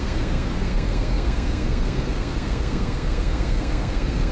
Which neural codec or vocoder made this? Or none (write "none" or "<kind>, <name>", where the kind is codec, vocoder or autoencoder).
codec, SNAC